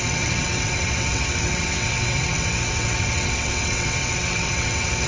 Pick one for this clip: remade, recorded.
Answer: remade